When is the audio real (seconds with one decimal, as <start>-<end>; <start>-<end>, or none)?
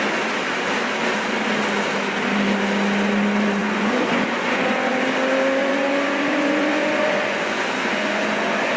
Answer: 0.0-3.6; 4.9-5.6